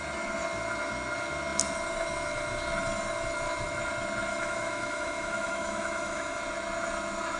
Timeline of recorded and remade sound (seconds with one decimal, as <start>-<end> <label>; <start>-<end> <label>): 0.0-4.3 recorded; 4.3-6.4 remade; 6.4-7.4 recorded